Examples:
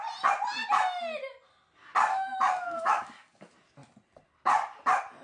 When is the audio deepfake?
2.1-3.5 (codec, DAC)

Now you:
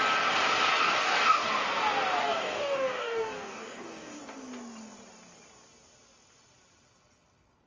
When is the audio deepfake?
0.7-1.5 (codec, DAC); 2.2-4.2